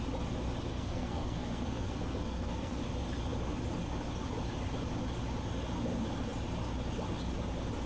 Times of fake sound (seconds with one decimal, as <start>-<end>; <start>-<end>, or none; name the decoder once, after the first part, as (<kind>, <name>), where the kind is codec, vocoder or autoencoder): 0.7-2.8 (codec, SNAC)